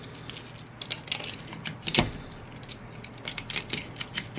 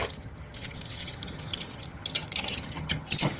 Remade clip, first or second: second